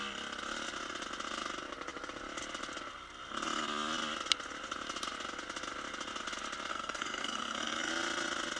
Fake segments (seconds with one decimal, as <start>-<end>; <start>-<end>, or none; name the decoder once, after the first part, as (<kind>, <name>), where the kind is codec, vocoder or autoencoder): 6.7-7.9 (codec, SNAC)